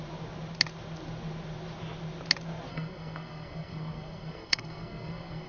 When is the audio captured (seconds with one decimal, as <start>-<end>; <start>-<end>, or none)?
0.0-2.7